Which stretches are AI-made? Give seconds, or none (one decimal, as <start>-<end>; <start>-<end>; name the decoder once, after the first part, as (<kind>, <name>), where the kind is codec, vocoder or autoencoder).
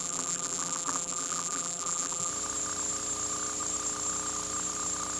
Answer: 0.0-2.3 (vocoder, BigVGAN v2)